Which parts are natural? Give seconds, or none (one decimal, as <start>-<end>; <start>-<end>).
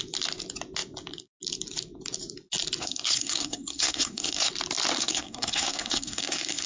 0.0-2.8; 4.5-5.0